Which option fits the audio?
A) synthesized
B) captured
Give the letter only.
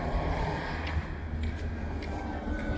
B